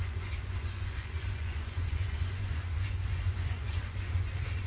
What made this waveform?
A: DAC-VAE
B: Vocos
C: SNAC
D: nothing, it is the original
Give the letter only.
B